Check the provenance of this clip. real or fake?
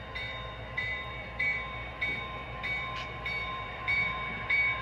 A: fake